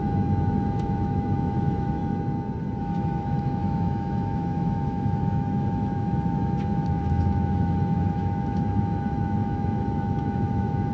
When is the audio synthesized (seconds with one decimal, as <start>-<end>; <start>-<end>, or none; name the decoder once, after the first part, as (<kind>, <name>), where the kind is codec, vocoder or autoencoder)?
0.0-2.0 (autoencoder, DAC-VAE); 2.8-10.9